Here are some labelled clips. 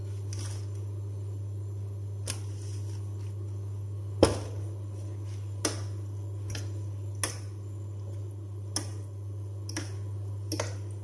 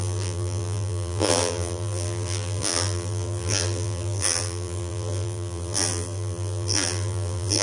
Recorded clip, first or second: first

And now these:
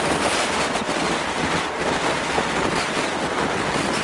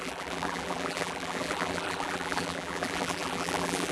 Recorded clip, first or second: first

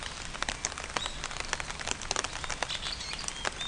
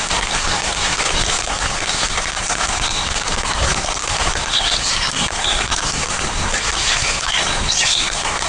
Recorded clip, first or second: first